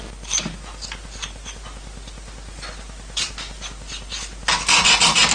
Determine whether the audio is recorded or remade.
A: recorded